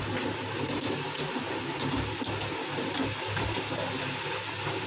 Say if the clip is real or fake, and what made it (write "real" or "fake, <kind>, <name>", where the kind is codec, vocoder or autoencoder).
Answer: real